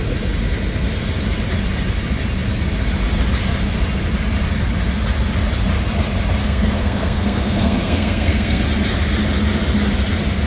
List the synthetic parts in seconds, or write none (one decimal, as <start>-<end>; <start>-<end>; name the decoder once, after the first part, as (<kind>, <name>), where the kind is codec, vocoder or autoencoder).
6.4-8.6 (codec, SNAC)